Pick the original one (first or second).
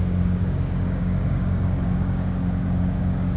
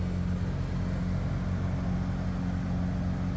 second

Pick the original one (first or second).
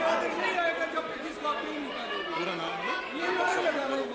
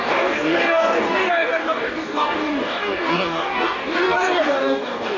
first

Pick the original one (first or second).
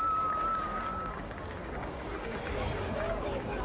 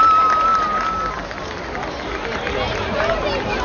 second